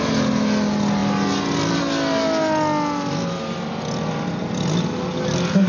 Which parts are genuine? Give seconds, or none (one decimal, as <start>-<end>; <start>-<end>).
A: 0.0-5.7